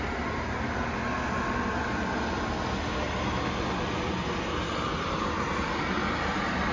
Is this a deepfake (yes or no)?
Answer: no